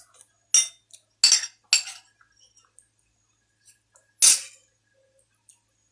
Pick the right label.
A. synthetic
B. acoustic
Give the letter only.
B